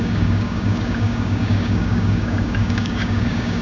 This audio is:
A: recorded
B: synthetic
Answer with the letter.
B